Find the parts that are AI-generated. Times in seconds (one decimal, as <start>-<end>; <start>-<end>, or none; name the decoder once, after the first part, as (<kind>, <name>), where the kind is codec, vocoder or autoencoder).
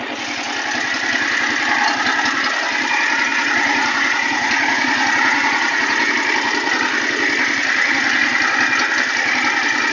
3.3-6.1 (vocoder, Vocos)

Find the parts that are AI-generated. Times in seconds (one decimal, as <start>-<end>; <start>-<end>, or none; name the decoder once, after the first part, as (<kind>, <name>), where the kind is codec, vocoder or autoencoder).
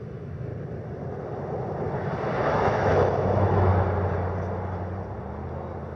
0.0-0.5 (autoencoder, DAC-VAE); 2.4-3.7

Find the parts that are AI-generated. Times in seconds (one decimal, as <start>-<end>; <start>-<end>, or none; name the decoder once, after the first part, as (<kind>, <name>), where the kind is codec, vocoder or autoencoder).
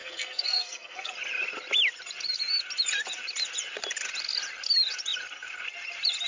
0.0-1.1 (codec, SNAC)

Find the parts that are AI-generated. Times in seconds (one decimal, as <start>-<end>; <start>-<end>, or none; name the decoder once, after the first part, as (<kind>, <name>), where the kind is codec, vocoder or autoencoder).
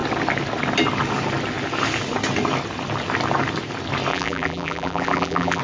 4.1-5.6 (vocoder, BigVGAN v2)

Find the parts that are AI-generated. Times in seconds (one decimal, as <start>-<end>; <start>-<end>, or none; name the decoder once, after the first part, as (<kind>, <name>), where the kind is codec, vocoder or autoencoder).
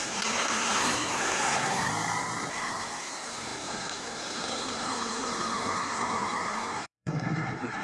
0.0-1.9 (codec, SNAC); 2.5-7.8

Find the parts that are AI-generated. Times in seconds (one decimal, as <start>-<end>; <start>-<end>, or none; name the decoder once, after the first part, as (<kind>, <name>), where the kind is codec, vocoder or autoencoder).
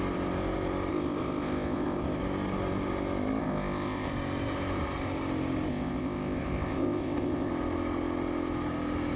0.9-2.2 (codec, ZipCodec); 3.4-4.1; 5.7-7.5